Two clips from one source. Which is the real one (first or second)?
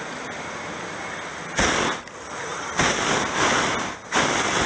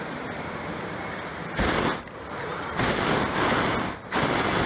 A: first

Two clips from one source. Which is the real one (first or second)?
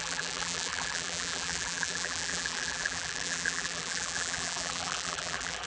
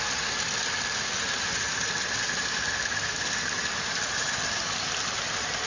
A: second